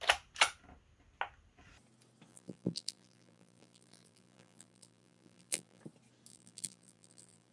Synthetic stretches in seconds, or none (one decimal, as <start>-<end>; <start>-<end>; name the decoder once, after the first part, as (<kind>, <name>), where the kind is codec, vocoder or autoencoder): 2.3-5.8 (vocoder, BigVGAN v2); 6.3-7.5